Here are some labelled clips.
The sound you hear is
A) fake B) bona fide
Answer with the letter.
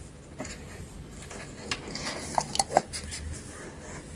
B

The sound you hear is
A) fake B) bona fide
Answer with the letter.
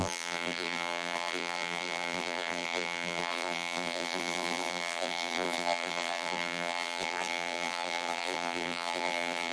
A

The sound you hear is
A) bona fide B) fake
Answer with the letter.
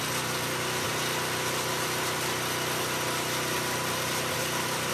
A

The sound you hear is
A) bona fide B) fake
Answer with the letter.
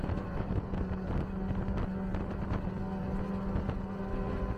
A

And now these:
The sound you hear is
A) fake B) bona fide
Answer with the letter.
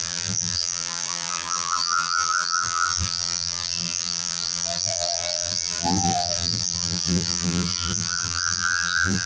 A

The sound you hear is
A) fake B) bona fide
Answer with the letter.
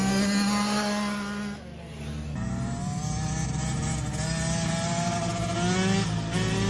B